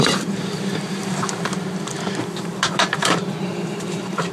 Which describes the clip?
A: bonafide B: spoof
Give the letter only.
B